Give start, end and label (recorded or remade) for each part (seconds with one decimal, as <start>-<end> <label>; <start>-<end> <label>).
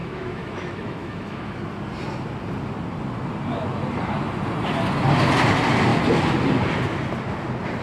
0.0-1.6 remade; 1.6-7.8 recorded